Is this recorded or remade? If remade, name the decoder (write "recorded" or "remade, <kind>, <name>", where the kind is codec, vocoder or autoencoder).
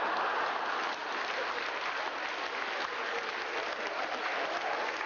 recorded